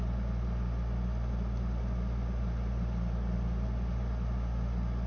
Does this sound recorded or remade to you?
recorded